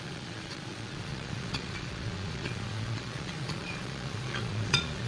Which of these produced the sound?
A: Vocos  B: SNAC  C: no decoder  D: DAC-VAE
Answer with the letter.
A